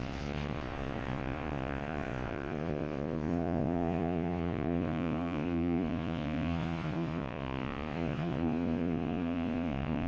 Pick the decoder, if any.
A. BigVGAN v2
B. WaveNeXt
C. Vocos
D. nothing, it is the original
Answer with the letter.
C